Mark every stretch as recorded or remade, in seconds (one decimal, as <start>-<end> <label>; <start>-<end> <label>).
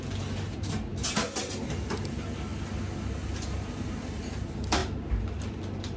0.0-6.0 recorded